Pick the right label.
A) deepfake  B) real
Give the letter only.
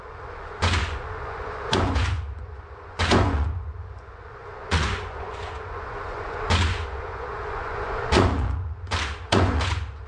A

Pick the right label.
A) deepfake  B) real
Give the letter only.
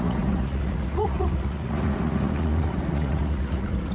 A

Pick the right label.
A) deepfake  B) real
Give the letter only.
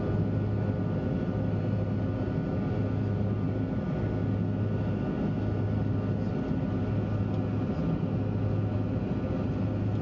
B